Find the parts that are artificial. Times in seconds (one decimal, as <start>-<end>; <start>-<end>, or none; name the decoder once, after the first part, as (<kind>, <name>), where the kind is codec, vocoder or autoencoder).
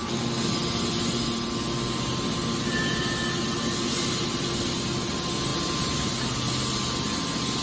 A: none